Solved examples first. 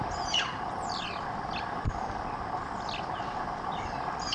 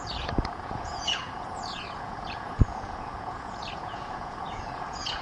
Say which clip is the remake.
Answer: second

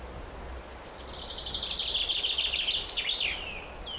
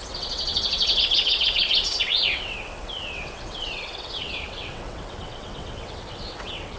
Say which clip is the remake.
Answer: second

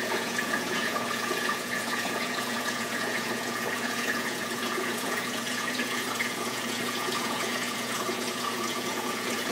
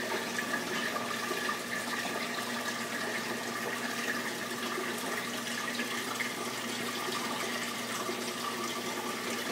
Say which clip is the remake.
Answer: first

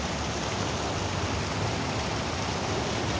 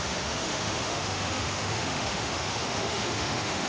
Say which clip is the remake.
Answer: second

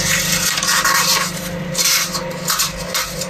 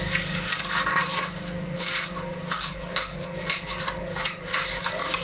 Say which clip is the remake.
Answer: second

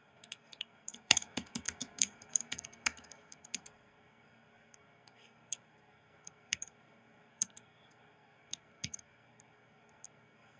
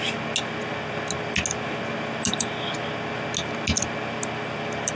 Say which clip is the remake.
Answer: first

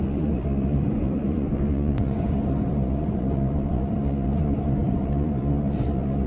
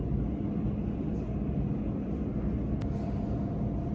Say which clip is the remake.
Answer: first